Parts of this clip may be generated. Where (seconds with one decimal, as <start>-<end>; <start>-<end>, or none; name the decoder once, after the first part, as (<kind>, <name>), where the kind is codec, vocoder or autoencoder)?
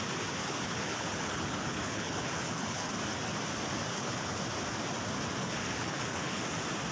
0.4-2.9 (codec, HILCodec); 3.9-4.4; 5.4-6.4